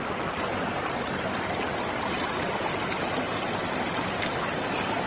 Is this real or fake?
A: fake